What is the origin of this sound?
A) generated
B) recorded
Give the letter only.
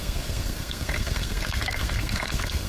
A